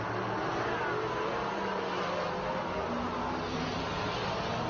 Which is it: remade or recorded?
recorded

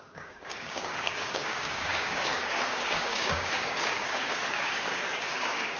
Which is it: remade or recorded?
remade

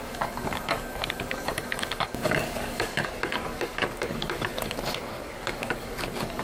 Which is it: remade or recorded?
remade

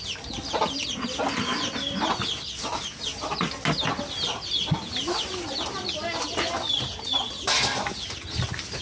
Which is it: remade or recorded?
recorded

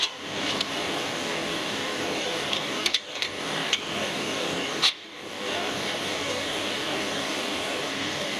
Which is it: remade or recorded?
remade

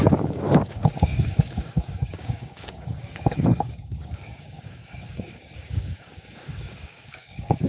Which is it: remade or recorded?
remade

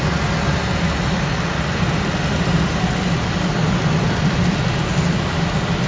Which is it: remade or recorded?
recorded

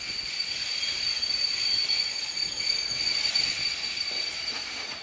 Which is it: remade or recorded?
recorded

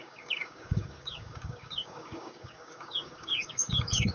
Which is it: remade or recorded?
remade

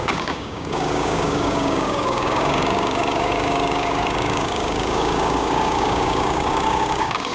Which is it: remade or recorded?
remade